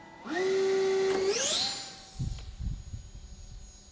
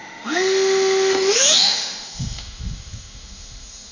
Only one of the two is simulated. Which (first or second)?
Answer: second